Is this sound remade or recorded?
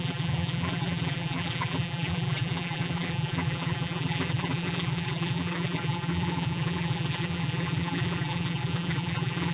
remade